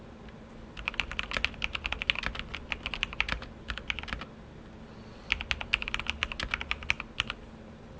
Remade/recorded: recorded